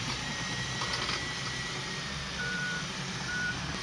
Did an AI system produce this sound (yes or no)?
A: yes